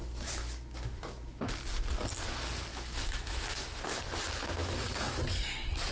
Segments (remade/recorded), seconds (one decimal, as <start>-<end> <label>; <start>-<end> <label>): 0.0-1.4 remade; 1.4-2.7 recorded; 2.7-4.0 remade; 4.0-4.6 recorded; 4.6-5.2 remade; 5.2-5.9 recorded